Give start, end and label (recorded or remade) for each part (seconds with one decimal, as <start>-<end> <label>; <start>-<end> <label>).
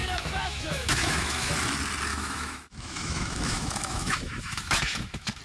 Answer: 0.0-1.5 remade; 1.5-2.1 recorded; 2.1-5.4 remade